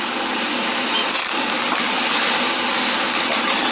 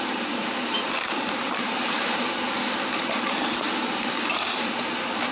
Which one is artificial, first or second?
second